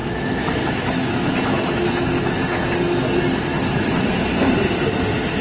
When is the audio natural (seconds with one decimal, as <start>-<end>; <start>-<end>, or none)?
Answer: 2.4-3.5; 4.1-5.4